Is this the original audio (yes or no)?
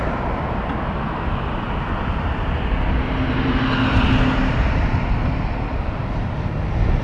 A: yes